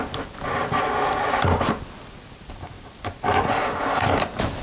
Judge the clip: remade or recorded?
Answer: recorded